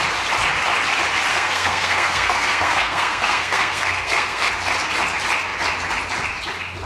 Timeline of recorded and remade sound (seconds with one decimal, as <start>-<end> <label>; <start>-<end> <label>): 0.0-1.3 recorded; 1.3-4.5 remade; 4.5-6.9 recorded